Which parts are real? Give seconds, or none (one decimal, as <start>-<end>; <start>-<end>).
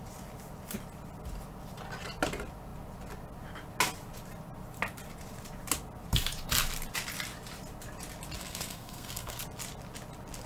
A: 0.0-8.4; 9.4-10.5